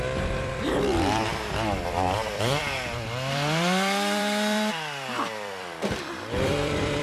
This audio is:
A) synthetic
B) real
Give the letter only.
A